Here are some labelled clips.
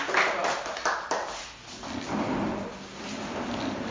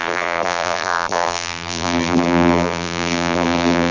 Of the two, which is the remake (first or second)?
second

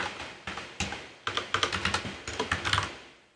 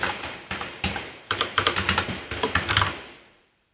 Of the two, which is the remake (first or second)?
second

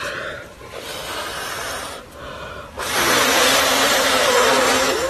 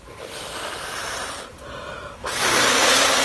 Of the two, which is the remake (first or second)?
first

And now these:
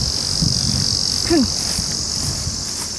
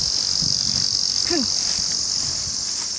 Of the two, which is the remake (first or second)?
second